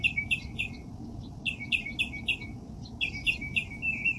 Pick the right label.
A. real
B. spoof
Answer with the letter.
A